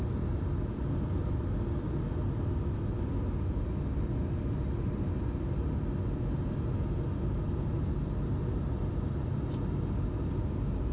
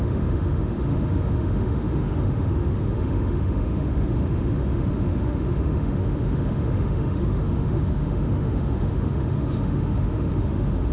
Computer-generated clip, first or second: second